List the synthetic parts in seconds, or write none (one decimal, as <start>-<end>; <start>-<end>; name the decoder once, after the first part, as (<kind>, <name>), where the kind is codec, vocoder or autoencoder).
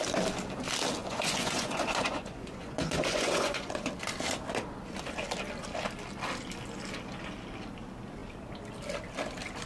1.0-3.9 (vocoder, Vocos)